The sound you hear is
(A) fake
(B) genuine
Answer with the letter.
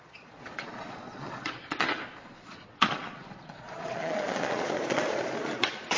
A